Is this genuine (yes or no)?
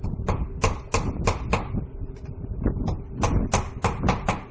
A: yes